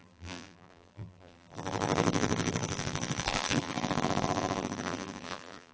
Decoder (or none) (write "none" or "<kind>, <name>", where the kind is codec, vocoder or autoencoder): vocoder, BigVGAN v2